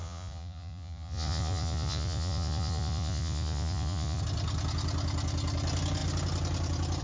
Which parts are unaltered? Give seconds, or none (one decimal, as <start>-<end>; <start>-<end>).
4.2-7.0